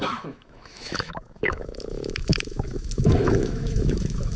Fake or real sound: fake